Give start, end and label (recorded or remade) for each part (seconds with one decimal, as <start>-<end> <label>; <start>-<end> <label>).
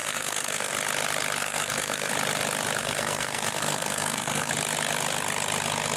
0.0-0.7 remade; 0.7-1.4 recorded; 1.4-2.1 remade; 2.1-2.8 recorded; 2.8-4.5 remade; 4.5-6.0 recorded